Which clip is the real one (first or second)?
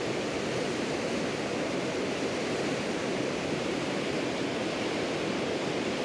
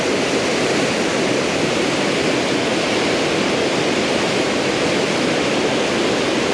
second